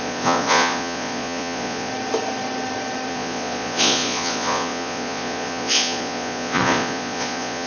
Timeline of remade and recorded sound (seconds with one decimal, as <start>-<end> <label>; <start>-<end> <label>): 0.0-1.9 remade; 1.9-3.1 recorded; 3.1-7.7 remade

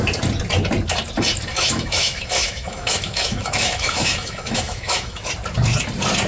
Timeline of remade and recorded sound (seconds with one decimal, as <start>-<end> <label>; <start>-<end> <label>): 0.0-1.5 recorded; 1.5-5.3 remade; 5.3-6.3 recorded

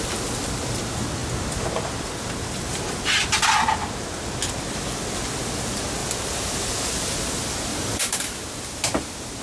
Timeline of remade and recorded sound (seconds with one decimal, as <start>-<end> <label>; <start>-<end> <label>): 0.0-6.0 recorded; 6.0-6.5 remade; 6.5-7.7 recorded; 7.7-8.6 remade; 8.6-9.4 recorded

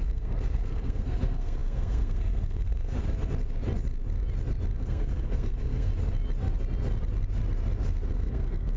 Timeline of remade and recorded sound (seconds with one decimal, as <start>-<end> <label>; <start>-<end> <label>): 0.0-3.0 remade; 3.0-4.8 recorded; 4.8-5.9 remade; 5.9-8.1 recorded; 8.1-8.8 remade

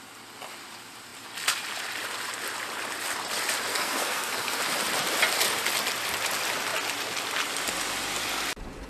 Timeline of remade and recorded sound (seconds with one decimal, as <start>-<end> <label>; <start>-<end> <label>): 0.0-3.7 recorded; 3.7-4.6 remade; 4.6-8.9 recorded

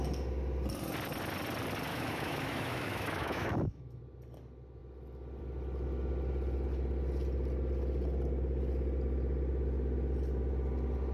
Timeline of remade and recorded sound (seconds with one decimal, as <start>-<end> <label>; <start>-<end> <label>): 0.0-1.9 recorded; 1.9-4.0 remade; 4.0-11.1 recorded